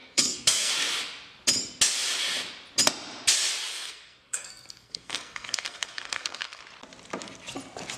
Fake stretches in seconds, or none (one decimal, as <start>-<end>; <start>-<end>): 0.0-0.7; 3.7-6.6

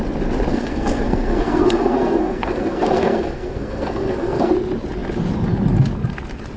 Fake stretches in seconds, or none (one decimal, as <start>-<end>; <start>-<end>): 0.5-4.5

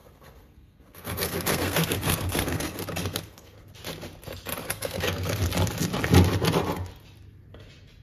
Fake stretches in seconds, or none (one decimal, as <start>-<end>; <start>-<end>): 0.0-3.7; 4.6-5.4

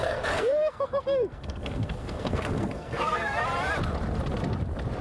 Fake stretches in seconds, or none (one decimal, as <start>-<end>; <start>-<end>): 0.0-3.4

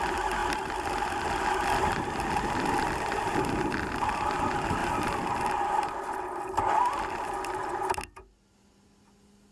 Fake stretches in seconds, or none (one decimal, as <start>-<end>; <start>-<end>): none

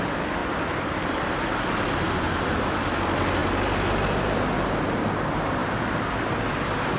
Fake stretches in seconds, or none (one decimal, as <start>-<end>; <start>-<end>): none

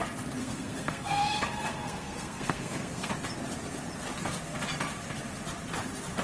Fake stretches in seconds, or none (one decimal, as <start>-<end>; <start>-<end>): 0.4-3.1